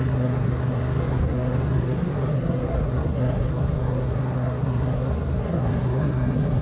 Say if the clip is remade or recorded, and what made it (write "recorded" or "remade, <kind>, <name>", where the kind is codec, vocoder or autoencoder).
remade, codec, SNAC